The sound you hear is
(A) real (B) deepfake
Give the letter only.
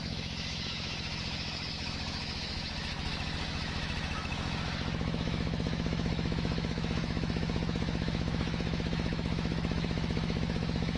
B